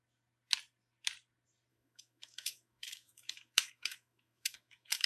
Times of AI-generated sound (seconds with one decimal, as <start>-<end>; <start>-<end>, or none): 1.7-5.1